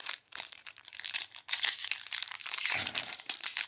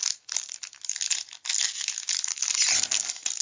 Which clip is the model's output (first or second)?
first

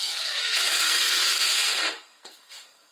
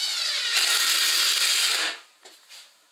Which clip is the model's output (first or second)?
first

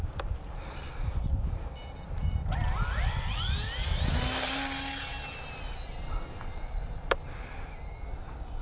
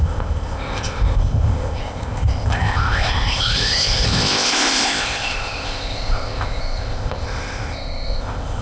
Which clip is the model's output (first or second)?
second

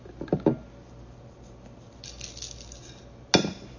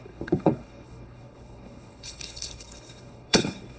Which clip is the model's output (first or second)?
second